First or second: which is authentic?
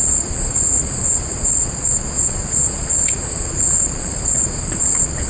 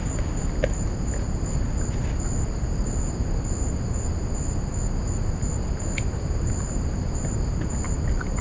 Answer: second